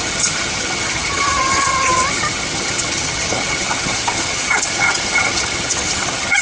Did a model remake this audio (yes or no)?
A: yes